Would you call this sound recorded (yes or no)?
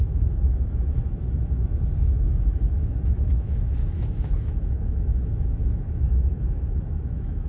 no